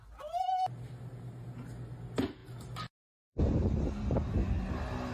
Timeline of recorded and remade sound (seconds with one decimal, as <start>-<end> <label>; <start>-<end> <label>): 0.0-5.1 recorded